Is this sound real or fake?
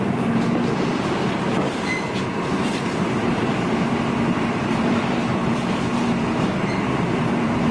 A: fake